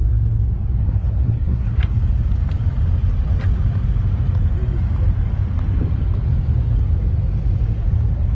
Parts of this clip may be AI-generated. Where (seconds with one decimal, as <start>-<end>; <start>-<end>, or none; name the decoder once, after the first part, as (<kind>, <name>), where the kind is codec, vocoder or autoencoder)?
0.8-1.9 (codec, SNAC)